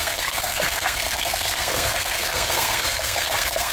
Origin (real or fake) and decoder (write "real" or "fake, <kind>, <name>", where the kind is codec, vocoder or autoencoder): fake, codec, SNAC